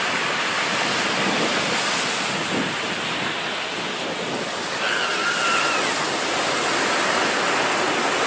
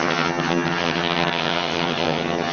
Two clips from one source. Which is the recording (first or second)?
first